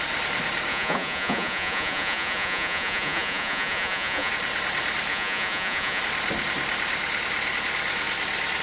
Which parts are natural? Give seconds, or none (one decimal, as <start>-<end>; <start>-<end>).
0.0-0.7; 4.3-5.1; 6.0-8.6